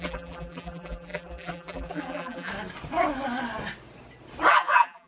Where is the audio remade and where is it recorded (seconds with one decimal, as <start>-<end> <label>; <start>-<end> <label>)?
0.0-2.5 remade; 2.5-4.5 recorded; 4.5-5.1 remade